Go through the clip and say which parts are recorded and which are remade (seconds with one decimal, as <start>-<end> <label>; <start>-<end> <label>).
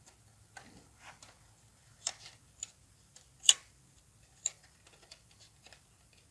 0.0-6.3 recorded